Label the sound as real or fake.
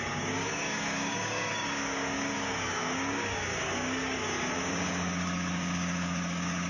fake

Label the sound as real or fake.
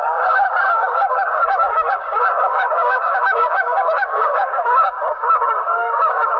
fake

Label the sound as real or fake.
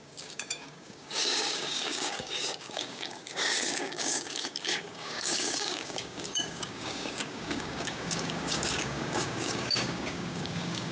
fake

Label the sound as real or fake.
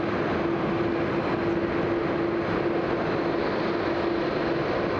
real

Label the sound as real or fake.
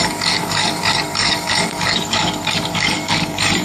fake